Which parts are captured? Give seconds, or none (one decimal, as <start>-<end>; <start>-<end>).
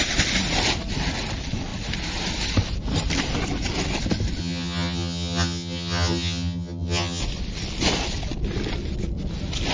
0.0-4.4; 7.2-9.7